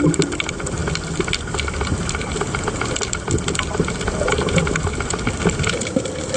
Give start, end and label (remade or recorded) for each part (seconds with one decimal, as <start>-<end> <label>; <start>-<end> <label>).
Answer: 0.0-6.4 recorded